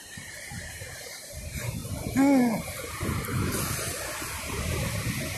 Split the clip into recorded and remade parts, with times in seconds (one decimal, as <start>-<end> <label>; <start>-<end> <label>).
0.0-1.8 remade; 1.8-2.6 recorded; 2.6-3.3 remade; 3.3-4.4 recorded; 4.4-5.4 remade